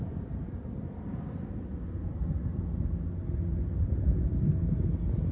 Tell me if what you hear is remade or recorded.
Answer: recorded